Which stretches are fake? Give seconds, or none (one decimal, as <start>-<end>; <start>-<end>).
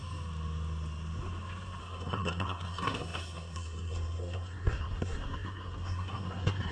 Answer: 1.8-6.7